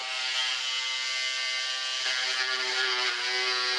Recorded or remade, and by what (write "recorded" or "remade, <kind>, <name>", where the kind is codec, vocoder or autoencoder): recorded